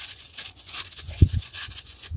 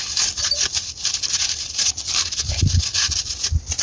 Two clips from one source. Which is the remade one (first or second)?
first